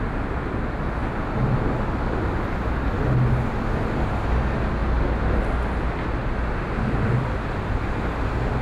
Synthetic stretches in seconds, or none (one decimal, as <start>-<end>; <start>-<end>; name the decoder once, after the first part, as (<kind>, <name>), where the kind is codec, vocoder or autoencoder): none